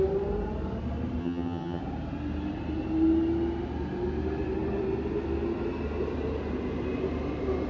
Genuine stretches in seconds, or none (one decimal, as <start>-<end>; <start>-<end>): 0.0-1.2; 1.8-7.7